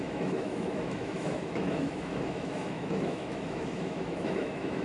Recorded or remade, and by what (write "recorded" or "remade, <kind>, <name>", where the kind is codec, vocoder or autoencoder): remade, autoencoder, DAC-VAE